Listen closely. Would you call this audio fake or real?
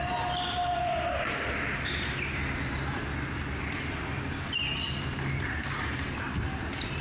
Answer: real